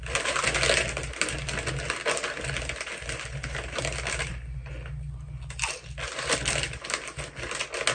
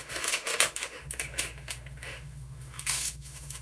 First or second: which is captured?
first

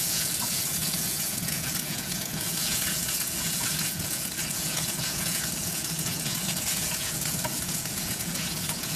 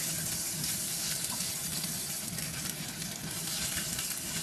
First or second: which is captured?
second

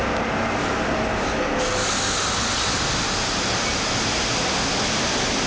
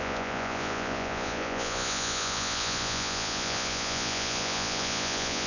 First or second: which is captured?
first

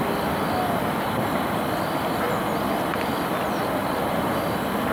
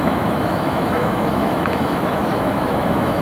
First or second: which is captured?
first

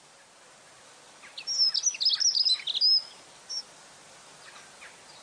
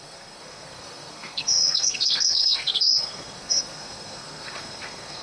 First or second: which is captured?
first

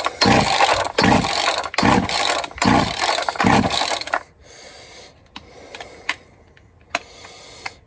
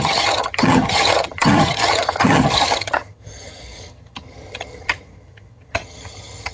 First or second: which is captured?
first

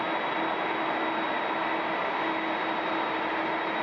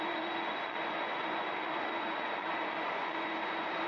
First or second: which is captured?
first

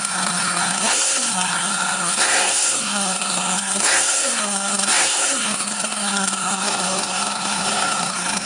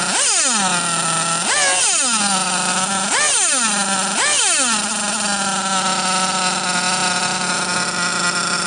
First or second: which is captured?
second